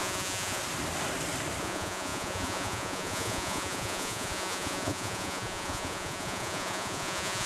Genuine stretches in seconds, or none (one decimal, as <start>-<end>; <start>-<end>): 0.6-1.6